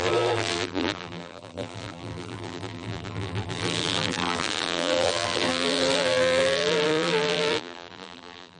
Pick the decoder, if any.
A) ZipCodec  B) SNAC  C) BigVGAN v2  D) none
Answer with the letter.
C